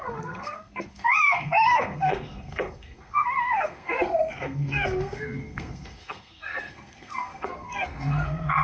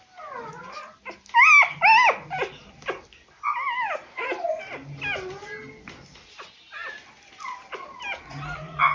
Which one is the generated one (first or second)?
first